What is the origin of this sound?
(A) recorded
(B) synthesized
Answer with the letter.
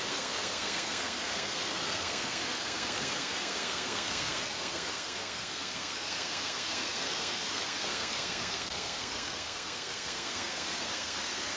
B